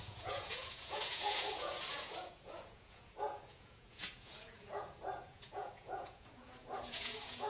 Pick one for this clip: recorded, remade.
remade